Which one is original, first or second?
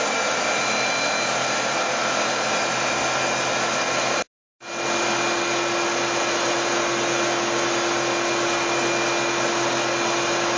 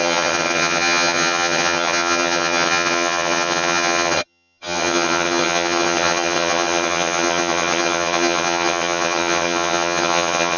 first